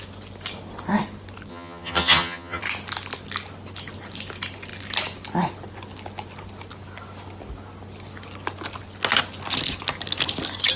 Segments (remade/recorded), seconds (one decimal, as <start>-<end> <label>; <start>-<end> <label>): 0.0-1.5 recorded; 1.5-2.6 remade; 2.6-10.8 recorded